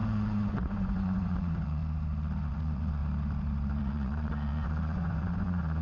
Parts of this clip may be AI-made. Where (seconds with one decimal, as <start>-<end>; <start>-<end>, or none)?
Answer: 0.0-1.8; 2.5-3.0; 3.8-5.8